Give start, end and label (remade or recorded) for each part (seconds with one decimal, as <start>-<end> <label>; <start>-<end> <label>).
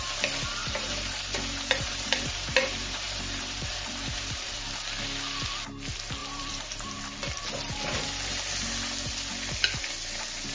0.0-0.6 recorded; 0.6-4.6 remade; 4.6-6.2 recorded; 6.2-7.4 remade; 7.4-10.5 recorded